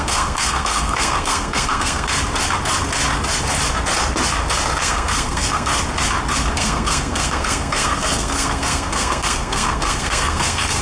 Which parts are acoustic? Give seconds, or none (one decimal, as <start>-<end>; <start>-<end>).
2.1-4.8; 5.7-6.5